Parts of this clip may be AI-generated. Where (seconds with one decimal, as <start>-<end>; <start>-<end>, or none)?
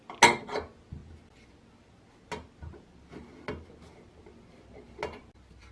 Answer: none